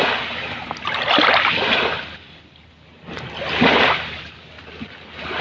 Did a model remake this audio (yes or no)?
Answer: no